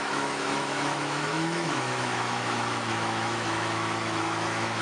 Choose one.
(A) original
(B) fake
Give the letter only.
B